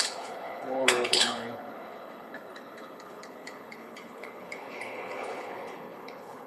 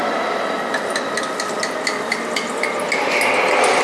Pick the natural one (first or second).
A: second